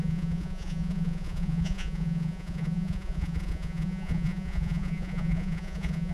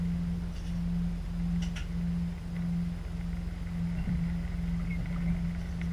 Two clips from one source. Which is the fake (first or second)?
first